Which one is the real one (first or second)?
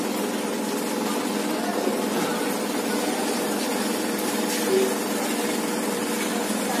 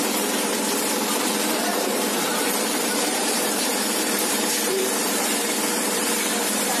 first